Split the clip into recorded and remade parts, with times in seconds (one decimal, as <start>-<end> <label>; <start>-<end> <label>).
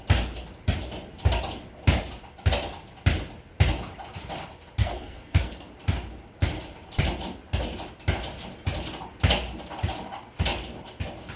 0.0-4.8 recorded; 4.8-5.7 remade; 5.7-11.4 recorded